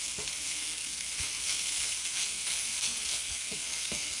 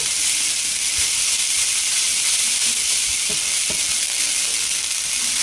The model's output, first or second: first